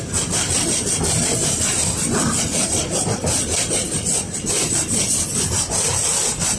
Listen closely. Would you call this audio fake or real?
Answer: real